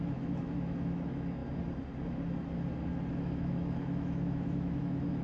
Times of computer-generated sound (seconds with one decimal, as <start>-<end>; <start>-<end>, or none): 0.0-1.4; 3.1-5.2